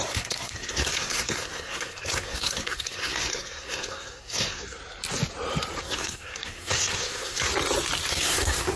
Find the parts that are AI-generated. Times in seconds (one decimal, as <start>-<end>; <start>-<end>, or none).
0.0-4.8; 5.8-7.5; 8.1-8.8